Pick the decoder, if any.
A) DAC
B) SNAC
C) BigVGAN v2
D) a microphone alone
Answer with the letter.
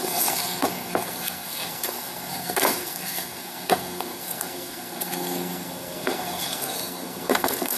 B